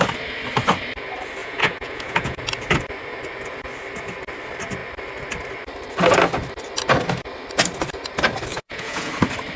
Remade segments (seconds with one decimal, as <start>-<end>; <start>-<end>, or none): 1.4-2.4; 8.5-9.1